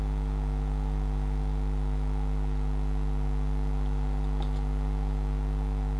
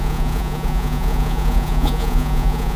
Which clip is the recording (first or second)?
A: first